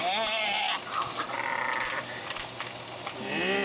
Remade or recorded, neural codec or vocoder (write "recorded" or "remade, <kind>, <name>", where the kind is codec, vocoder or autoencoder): recorded